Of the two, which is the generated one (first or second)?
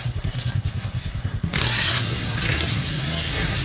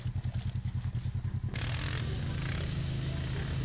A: first